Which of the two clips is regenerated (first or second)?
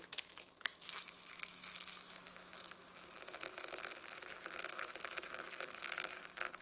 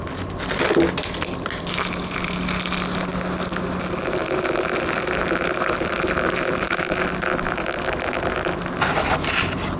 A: first